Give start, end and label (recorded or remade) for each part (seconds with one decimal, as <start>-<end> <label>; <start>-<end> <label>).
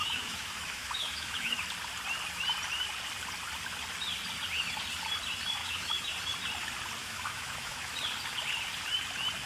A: 0.0-1.6 remade; 1.6-5.6 recorded; 5.6-6.1 remade; 6.1-7.0 recorded; 7.0-7.9 remade; 7.9-9.5 recorded